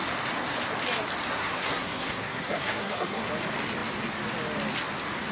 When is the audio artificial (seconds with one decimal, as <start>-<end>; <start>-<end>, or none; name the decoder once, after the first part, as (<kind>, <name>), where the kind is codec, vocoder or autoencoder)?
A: 1.3-3.3 (codec, SNAC)